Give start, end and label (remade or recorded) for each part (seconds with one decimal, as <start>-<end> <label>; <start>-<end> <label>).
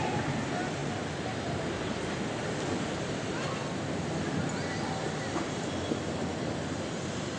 0.0-7.4 recorded